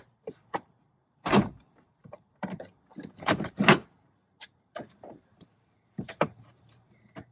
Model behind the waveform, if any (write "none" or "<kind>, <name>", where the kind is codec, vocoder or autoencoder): vocoder, BigVGAN v2